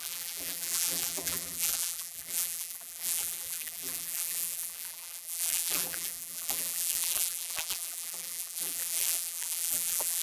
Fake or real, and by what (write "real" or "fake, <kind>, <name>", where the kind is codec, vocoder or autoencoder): fake, vocoder, BigVGAN v2